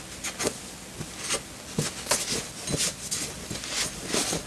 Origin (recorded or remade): recorded